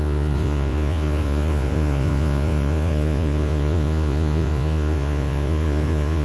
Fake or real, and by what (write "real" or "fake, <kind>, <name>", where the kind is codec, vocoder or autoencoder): fake, vocoder, Vocos